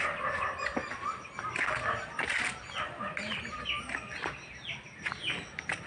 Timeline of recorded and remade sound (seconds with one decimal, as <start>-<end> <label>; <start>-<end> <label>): 0.0-5.9 recorded